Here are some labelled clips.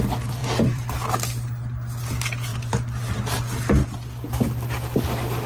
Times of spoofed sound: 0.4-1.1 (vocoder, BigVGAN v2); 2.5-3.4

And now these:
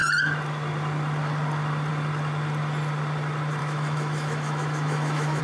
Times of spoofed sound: 3.6-5.4 (autoencoder, DAC-VAE)